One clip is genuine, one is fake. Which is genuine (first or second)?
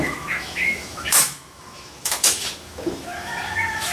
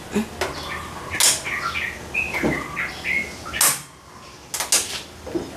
second